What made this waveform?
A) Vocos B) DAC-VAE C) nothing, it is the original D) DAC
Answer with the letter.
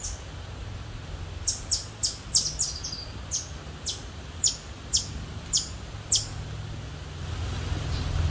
C